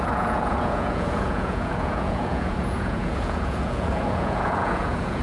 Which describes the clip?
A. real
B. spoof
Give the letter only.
B